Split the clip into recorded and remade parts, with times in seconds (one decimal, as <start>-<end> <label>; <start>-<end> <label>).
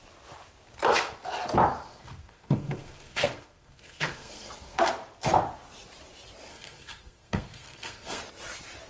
0.0-1.8 recorded; 1.8-4.9 remade; 4.9-6.5 recorded; 6.5-8.2 remade; 8.2-8.9 recorded